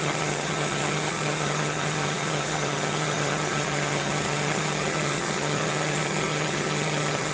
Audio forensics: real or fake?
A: fake